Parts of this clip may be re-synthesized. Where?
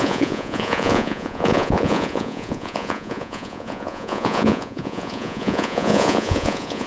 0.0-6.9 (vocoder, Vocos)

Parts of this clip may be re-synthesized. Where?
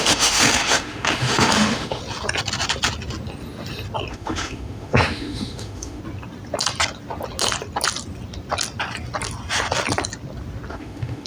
0.0-2.0 (autoencoder, DAC-VAE); 4.1-6.0; 10.7-11.3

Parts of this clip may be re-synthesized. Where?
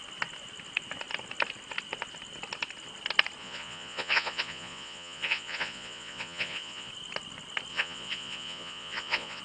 3.4-6.9 (vocoder, Vocos); 7.7-9.4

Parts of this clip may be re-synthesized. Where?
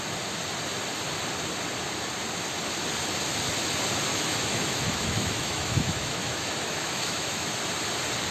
4.1-7.5 (autoencoder, DAC-VAE)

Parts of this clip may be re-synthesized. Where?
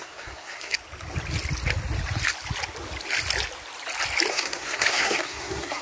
0.0-0.8 (codec, SNAC); 4.3-5.8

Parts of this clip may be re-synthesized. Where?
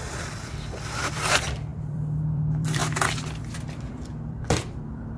0.0-2.8 (vocoder, BigVGAN v2); 3.5-5.2